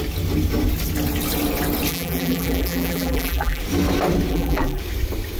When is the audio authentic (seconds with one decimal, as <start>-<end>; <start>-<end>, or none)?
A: 0.0-1.9; 3.6-4.3; 4.8-5.4